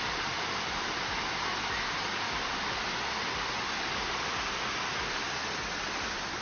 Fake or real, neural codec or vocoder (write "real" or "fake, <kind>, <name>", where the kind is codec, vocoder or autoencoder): real